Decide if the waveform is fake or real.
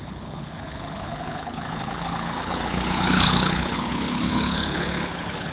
fake